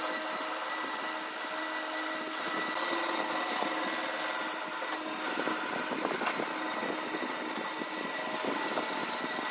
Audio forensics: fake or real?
real